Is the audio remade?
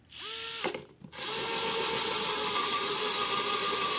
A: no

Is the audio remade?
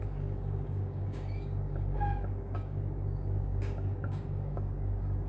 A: yes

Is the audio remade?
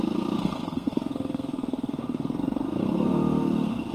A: yes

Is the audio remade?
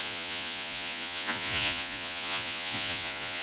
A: yes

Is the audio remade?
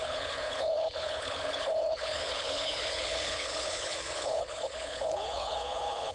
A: yes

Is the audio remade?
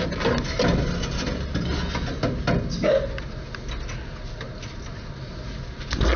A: no